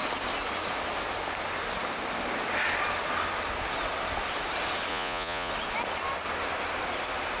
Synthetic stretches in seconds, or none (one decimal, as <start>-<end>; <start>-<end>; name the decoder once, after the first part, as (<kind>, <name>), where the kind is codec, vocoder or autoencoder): 4.9-5.5 (vocoder, Vocos)